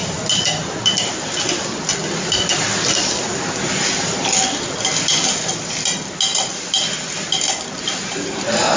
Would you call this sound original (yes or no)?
yes